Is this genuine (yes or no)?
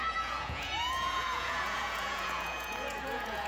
no